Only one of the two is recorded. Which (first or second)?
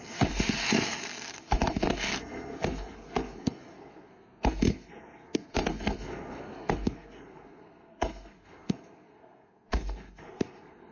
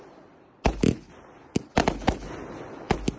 second